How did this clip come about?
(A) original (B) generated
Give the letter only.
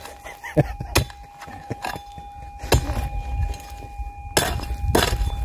A